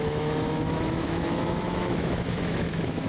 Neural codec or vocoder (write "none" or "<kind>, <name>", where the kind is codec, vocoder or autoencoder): autoencoder, DAC-VAE